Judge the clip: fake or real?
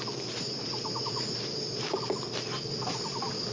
real